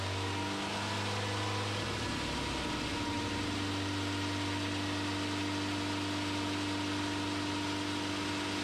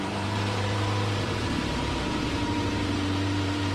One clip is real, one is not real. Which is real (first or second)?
first